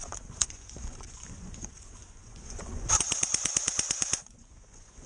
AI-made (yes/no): yes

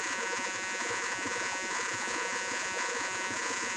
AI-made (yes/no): yes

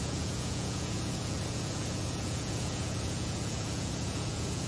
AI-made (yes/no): yes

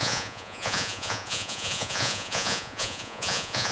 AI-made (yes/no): yes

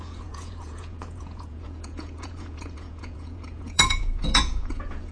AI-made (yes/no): yes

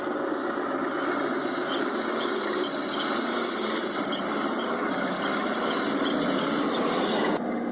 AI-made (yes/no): no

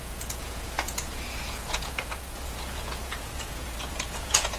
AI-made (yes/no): yes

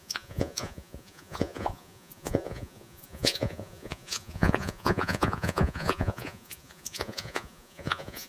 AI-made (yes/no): yes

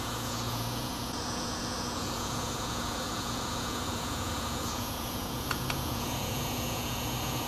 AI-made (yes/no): yes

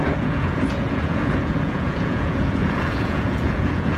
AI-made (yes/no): yes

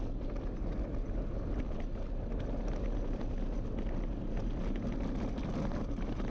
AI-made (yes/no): no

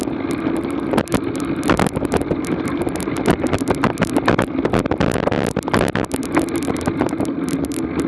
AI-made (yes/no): no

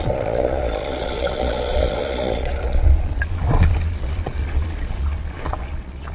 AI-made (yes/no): yes